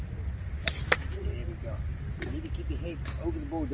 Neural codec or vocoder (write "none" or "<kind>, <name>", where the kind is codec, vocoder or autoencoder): none